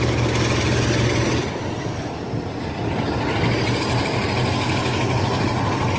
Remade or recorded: recorded